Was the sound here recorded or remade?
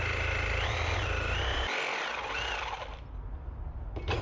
recorded